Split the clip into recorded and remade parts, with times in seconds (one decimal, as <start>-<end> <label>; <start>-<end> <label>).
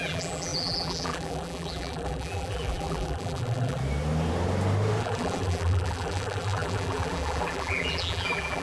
0.0-3.8 remade; 3.8-5.0 recorded; 5.0-8.6 remade